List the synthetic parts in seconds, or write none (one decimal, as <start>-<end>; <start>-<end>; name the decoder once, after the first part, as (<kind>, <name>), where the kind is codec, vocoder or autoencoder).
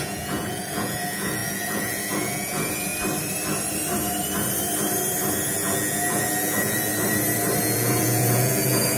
0.0-2.9 (vocoder, Vocos); 5.5-6.9; 7.6-9.0